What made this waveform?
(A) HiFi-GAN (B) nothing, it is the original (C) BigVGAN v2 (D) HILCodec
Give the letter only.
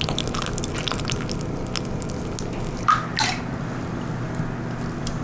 B